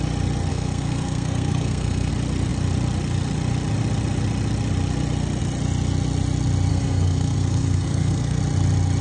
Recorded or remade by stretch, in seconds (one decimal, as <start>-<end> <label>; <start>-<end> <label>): 0.0-0.5 recorded; 0.5-2.1 remade; 2.1-6.7 recorded; 6.7-8.4 remade; 8.4-9.0 recorded